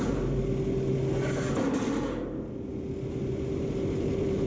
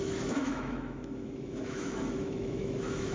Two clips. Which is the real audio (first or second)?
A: first